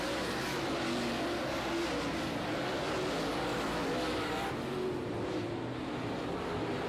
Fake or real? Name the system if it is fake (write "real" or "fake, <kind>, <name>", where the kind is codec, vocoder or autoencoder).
real